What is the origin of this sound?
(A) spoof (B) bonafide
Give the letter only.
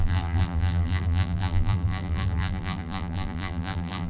A